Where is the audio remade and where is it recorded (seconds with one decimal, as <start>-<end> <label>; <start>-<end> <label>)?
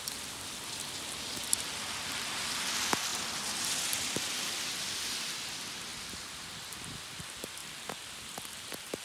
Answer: 0.0-3.1 recorded; 3.1-4.7 remade; 4.7-9.0 recorded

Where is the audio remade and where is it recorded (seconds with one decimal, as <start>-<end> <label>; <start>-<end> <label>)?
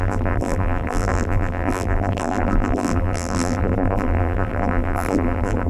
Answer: 0.0-5.7 remade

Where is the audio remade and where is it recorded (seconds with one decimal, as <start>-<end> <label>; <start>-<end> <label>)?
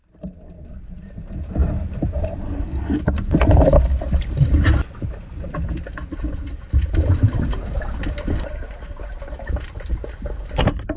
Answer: 0.0-11.0 remade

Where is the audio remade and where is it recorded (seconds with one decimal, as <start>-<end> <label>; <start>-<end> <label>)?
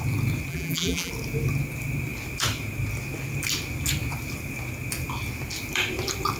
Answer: 0.0-0.5 recorded; 0.5-1.1 remade; 1.1-6.4 recorded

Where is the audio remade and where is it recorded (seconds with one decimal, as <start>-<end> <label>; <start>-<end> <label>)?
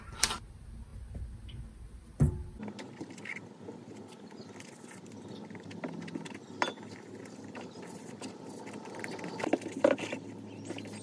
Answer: 0.0-11.0 recorded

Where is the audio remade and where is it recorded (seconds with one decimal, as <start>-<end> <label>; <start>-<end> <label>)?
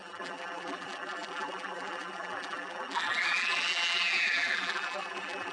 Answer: 0.0-5.5 remade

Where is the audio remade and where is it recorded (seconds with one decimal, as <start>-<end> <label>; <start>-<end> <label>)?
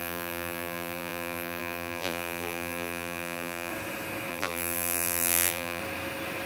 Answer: 0.0-3.7 remade; 3.7-4.3 recorded; 4.3-5.8 remade; 5.8-6.5 recorded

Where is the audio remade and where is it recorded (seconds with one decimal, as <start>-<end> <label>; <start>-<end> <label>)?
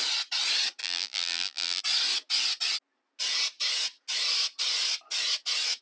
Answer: 0.0-0.8 recorded; 0.8-1.8 remade; 1.8-5.8 recorded